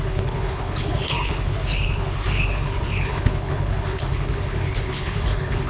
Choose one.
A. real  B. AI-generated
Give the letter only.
B